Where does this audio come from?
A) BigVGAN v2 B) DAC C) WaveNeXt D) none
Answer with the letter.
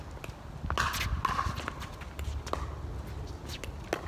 D